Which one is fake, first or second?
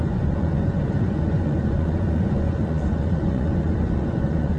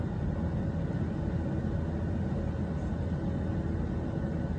first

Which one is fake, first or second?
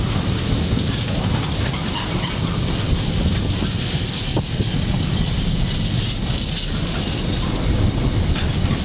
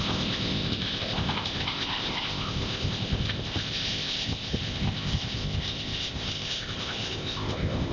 second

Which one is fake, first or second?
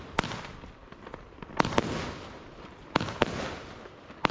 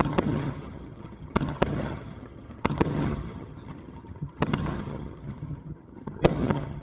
second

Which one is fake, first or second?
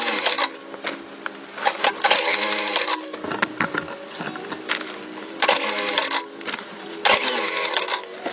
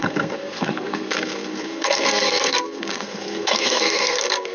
second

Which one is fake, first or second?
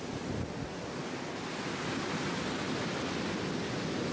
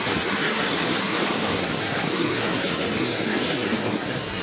second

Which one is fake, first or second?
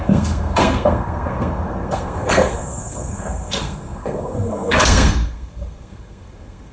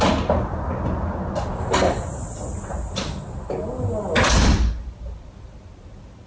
first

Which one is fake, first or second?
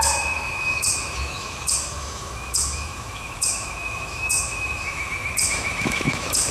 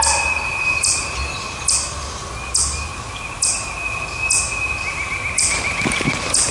first